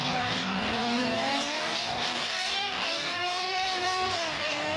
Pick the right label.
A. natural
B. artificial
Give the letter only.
B